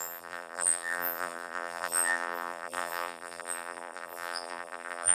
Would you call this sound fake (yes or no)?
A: yes